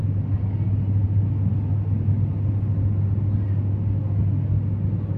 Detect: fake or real real